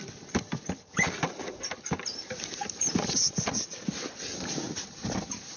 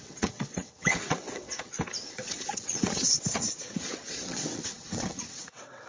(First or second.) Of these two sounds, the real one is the first